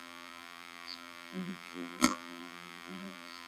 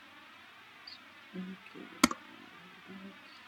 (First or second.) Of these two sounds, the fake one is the first